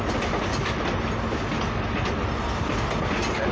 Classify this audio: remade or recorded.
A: recorded